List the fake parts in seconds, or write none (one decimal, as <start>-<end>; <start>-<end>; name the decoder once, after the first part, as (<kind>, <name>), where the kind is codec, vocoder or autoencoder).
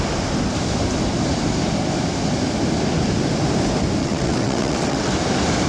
4.0-5.1 (vocoder, WaveNeXt)